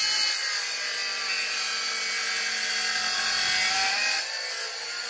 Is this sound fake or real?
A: real